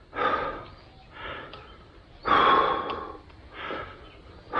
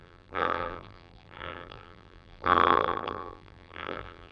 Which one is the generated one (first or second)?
second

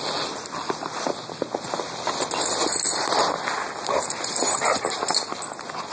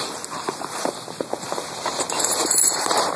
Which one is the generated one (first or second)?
second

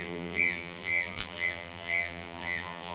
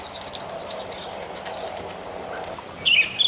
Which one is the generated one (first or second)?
first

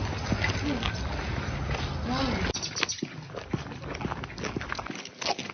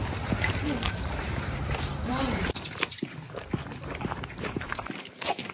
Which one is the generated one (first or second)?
second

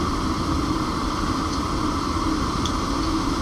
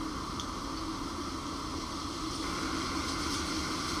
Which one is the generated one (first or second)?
first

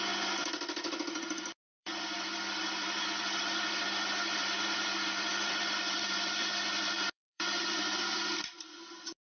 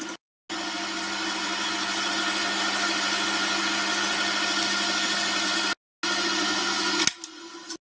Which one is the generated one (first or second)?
first